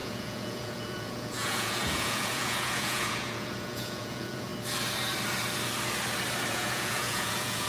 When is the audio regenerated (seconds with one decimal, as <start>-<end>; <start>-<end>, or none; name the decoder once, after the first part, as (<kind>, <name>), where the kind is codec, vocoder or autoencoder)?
0.0-4.5 (vocoder, Vocos); 6.5-7.7